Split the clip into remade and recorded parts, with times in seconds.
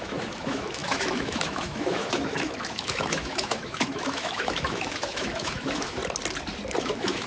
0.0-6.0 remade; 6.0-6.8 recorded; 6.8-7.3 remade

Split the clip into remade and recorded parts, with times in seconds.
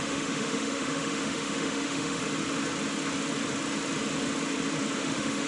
0.0-2.2 remade; 2.2-5.0 recorded; 5.0-5.5 remade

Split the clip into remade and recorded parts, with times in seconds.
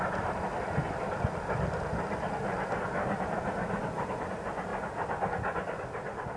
0.0-6.4 recorded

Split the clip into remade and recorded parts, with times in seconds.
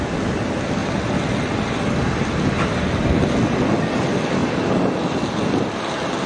0.0-6.3 recorded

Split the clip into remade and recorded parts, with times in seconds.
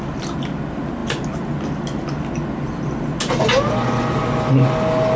0.0-5.2 recorded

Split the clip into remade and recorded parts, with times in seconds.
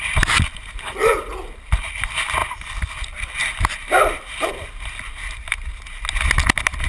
0.0-6.9 recorded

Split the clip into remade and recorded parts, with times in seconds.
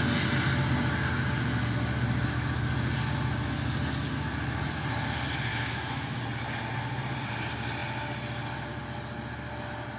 0.0-5.5 recorded; 5.5-6.2 remade; 6.2-10.0 recorded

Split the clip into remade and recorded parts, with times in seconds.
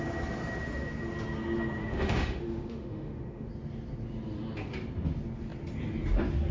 0.0-1.8 recorded; 1.8-3.5 remade; 3.5-6.5 recorded